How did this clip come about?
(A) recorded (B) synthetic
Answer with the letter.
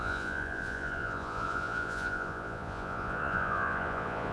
B